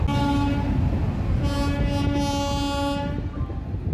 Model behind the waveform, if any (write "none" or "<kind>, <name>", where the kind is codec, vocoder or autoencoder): none